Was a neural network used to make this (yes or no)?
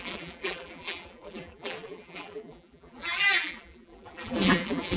yes